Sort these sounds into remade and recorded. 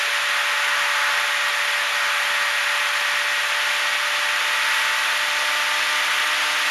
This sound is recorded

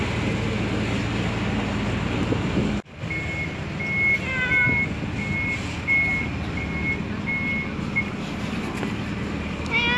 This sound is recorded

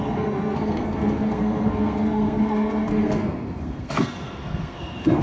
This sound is remade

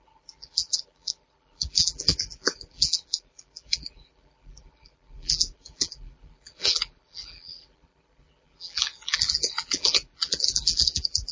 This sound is remade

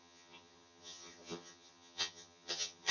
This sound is remade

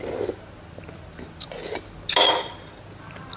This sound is recorded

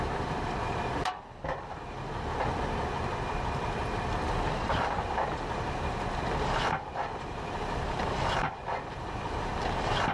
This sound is remade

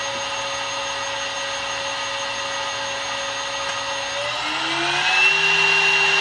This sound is recorded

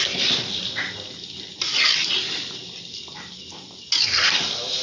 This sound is recorded